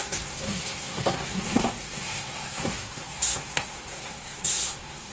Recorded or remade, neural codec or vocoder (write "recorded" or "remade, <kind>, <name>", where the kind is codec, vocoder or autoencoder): remade, codec, SNAC